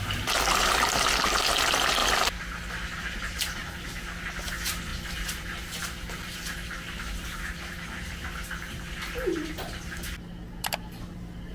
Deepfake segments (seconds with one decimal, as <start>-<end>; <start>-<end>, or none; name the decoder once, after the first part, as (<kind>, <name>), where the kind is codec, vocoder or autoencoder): none

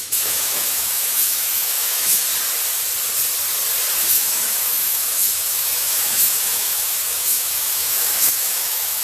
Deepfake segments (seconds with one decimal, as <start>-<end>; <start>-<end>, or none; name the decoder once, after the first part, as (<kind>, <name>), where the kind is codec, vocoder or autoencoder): 0.0-2.3 (autoencoder, DAC-VAE); 4.1-9.0